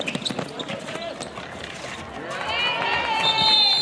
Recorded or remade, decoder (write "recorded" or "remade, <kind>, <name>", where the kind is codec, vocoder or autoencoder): recorded